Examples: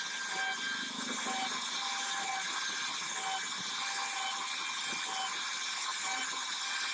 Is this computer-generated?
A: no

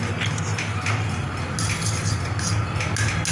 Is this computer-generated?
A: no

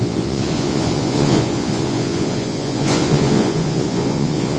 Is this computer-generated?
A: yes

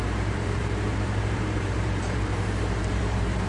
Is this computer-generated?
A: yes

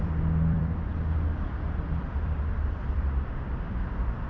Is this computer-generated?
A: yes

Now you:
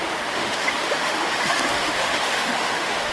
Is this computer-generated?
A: yes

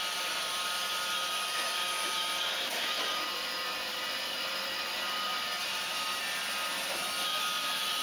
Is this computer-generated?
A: no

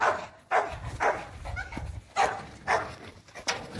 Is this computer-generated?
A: no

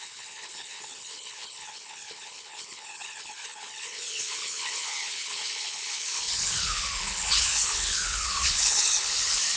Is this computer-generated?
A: yes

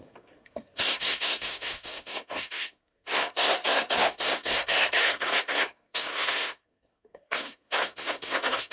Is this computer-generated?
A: yes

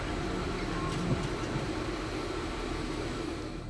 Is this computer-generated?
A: no